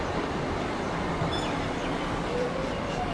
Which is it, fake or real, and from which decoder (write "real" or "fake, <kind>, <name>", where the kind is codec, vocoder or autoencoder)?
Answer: fake, vocoder, BigVGAN v2